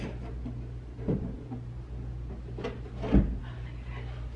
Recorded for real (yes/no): yes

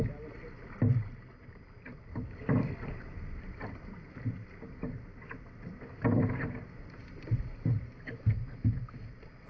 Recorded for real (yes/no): yes